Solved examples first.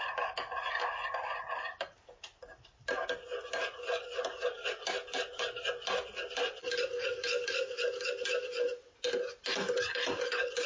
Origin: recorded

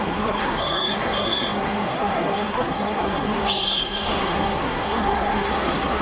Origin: remade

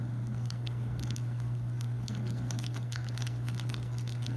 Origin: remade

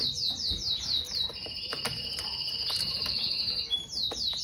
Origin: remade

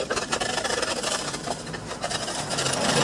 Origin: remade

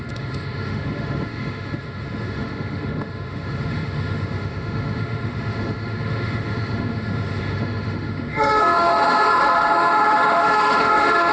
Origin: remade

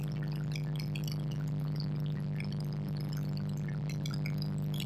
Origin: recorded